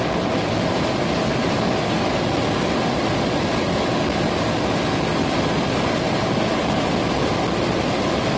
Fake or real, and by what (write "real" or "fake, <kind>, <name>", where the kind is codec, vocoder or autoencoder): real